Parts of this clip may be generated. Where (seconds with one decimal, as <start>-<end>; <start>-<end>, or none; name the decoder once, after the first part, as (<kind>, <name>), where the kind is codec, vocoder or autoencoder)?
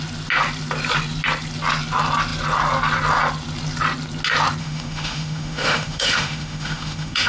4.6-7.3 (autoencoder, DAC-VAE)